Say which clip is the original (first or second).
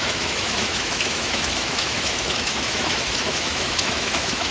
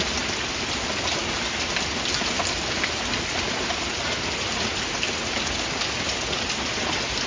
second